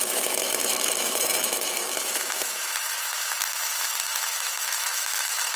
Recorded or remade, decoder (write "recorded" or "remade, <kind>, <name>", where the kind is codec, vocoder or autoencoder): remade, autoencoder, DAC-VAE